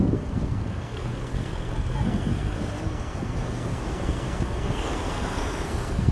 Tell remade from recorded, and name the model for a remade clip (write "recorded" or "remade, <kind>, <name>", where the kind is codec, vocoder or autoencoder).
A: remade, codec, SNAC